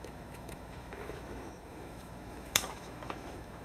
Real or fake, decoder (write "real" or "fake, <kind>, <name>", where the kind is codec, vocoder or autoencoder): fake, autoencoder, DAC-VAE